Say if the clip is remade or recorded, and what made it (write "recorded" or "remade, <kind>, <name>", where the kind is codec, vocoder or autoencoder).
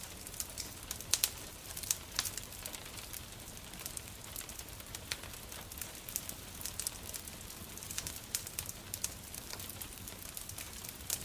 recorded